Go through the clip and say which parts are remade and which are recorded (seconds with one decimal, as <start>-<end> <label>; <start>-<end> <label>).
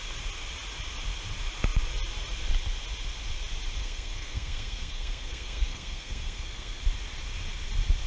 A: 0.0-3.8 recorded; 3.8-6.8 remade; 6.8-8.1 recorded